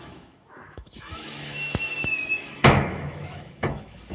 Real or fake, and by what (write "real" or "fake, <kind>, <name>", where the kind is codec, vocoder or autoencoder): fake, autoencoder, DAC-VAE